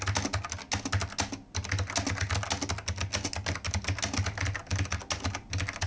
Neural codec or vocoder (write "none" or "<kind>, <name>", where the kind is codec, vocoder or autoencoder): none